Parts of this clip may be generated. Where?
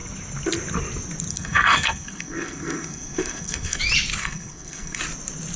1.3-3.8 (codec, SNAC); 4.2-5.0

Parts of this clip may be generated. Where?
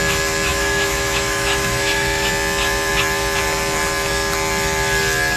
0.5-2.3 (autoencoder, DAC-VAE)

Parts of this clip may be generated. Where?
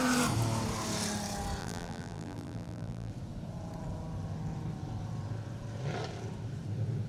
1.6-3.1 (vocoder, BigVGAN v2)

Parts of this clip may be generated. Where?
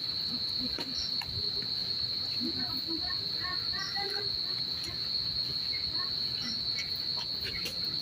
1.8-2.5 (vocoder, BigVGAN v2)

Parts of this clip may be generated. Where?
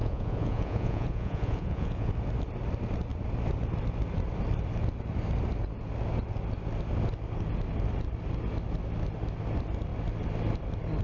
0.0-2.1 (vocoder, Vocos)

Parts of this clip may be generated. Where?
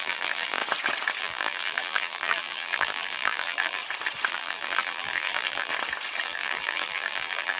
0.0-0.6 (vocoder, BigVGAN v2); 1.2-3.8; 4.3-5.7; 6.2-7.6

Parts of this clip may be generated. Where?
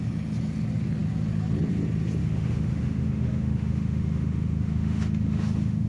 2.2-5.9 (autoencoder, DAC-VAE)